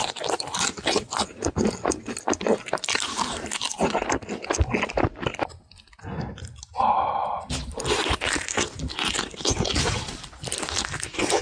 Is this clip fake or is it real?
real